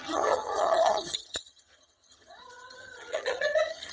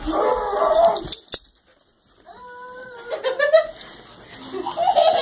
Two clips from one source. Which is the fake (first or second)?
first